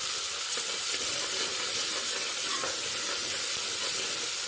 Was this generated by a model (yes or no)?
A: no